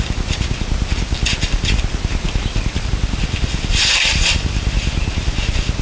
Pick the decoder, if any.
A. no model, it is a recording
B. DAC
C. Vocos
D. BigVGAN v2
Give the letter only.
A